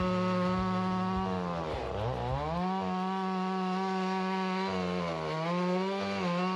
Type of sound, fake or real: real